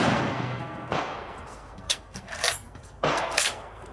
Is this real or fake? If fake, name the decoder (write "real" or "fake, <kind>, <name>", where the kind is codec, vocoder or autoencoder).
fake, codec, SNAC